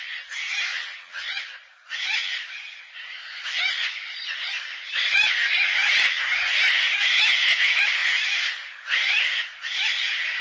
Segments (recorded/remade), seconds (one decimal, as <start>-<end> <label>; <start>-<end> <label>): 0.0-0.7 recorded; 0.7-1.4 remade; 1.4-10.4 recorded